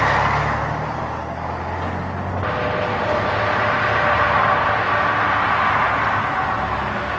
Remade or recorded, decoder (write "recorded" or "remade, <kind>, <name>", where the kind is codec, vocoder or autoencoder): recorded